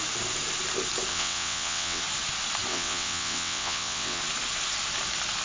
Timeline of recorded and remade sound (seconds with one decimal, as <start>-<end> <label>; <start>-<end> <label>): 0.0-1.1 recorded; 1.1-2.0 remade; 2.0-2.7 recorded; 2.7-4.2 remade; 4.2-5.4 recorded